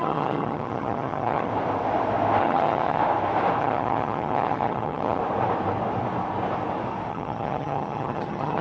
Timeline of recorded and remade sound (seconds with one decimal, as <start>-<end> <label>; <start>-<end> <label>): 0.0-1.5 remade; 1.5-2.4 recorded; 2.4-3.0 remade; 3.0-3.6 recorded; 3.6-5.2 remade; 5.2-7.1 recorded; 7.1-8.6 remade